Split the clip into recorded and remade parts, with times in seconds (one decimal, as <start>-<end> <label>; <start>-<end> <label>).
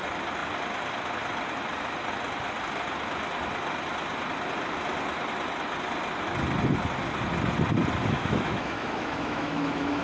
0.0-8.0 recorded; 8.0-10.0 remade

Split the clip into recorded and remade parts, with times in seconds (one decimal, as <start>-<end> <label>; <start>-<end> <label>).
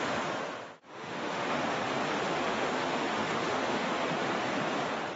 0.0-0.9 recorded; 0.9-1.6 remade; 1.6-2.3 recorded; 2.3-3.9 remade; 3.9-5.2 recorded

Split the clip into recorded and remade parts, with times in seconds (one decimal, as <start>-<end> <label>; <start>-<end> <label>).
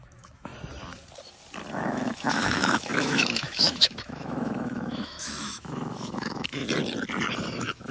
0.0-0.5 remade; 0.5-1.7 recorded; 1.7-6.6 remade; 6.6-7.4 recorded; 7.4-7.9 remade